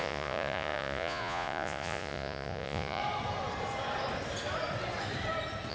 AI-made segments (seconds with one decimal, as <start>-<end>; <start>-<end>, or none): 0.0-3.0